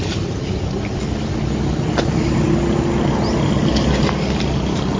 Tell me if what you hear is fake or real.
real